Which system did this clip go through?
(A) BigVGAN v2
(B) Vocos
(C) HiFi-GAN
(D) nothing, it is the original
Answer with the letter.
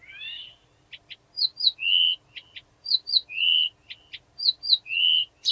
D